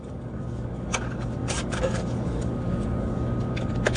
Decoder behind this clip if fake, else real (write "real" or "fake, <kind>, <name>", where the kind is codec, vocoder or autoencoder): fake, codec, DAC